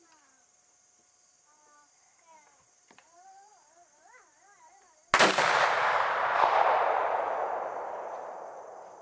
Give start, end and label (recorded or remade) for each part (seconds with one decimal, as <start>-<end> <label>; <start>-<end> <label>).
0.0-5.0 remade; 5.0-6.4 recorded; 6.4-9.0 remade